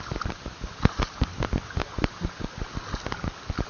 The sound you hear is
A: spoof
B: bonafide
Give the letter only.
B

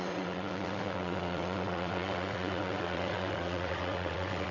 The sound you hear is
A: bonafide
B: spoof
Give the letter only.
B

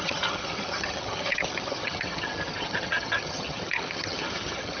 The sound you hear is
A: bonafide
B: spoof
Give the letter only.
B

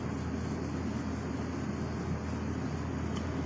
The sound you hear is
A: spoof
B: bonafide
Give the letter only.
B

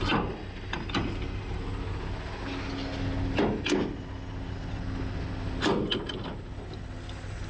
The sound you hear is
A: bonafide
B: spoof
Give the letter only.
A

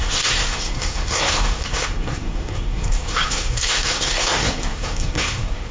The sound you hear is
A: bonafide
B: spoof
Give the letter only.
B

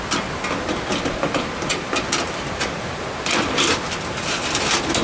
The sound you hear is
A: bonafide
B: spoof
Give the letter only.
A